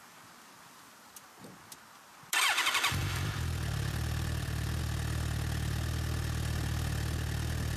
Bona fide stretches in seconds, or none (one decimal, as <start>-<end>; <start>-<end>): 0.0-2.1; 4.8-7.8